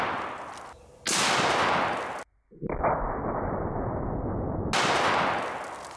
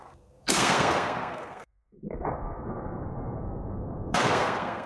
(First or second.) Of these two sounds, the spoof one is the second